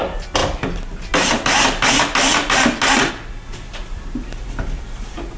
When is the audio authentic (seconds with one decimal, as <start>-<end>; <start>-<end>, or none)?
0.0-5.4

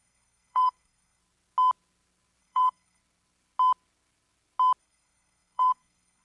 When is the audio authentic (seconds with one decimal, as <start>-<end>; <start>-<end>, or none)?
1.2-2.4; 3.0-4.8

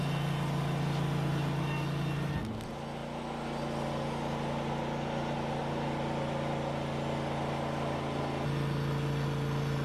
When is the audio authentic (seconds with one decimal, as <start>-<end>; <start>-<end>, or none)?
0.0-9.8

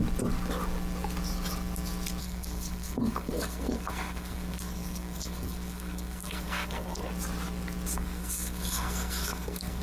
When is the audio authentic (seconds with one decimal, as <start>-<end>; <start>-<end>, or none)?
0.0-2.2; 7.1-7.9

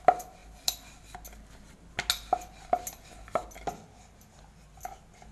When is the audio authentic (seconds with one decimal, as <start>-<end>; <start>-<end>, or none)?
0.0-5.3